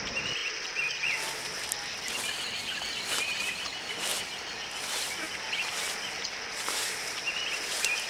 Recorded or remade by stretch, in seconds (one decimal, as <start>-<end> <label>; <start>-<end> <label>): 0.0-0.4 remade; 0.4-3.4 recorded; 3.4-4.1 remade; 4.1-7.0 recorded; 7.0-8.1 remade